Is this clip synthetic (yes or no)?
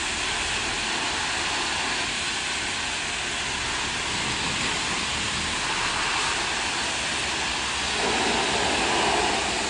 no